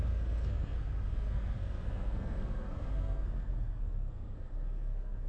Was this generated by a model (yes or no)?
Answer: yes